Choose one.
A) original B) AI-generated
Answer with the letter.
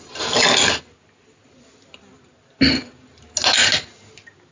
A